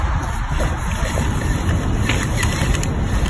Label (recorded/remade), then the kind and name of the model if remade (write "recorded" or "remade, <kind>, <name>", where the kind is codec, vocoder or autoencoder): recorded